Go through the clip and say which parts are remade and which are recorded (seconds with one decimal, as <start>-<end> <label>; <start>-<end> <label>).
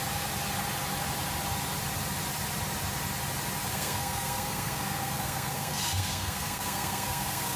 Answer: 0.0-3.6 recorded; 3.6-7.6 remade